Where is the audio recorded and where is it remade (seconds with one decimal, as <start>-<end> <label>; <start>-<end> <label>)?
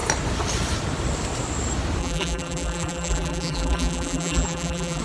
0.0-2.0 recorded; 2.0-5.0 remade